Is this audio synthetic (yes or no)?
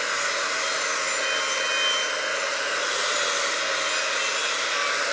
no